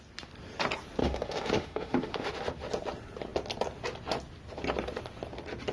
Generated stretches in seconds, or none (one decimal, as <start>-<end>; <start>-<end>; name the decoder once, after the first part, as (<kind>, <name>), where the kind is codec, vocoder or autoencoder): 1.0-2.3 (autoencoder, DAC-VAE)